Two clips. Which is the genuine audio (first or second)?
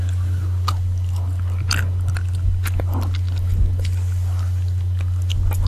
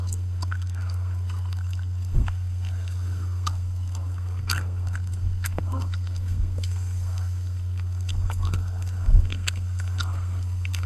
first